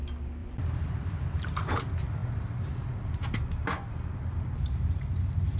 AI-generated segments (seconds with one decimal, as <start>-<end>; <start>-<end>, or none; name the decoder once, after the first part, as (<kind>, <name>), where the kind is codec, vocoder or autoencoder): 0.4-1.7 (vocoder, BigVGAN v2)